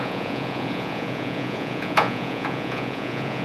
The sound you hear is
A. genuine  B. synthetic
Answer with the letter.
B